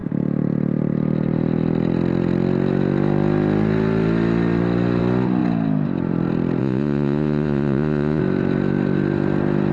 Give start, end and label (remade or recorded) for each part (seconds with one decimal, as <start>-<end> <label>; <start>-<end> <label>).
0.0-6.6 recorded; 6.6-8.2 remade; 8.2-9.7 recorded